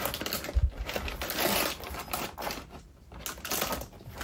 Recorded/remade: recorded